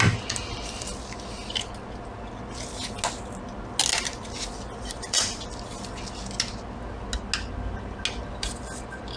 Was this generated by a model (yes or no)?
no